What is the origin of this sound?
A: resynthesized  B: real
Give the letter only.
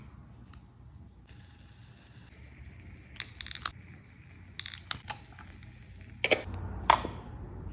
B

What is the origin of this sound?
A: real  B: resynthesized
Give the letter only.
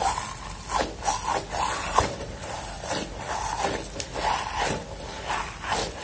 A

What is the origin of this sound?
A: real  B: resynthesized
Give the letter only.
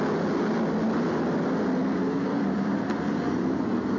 A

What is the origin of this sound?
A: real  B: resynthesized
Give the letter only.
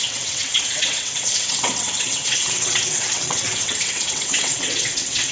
B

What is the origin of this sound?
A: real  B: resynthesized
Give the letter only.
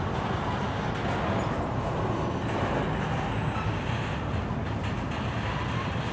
A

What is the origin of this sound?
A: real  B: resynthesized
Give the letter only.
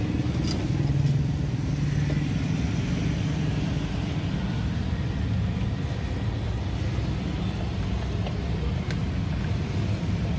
A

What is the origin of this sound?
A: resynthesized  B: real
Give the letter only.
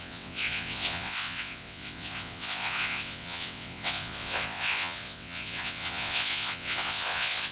A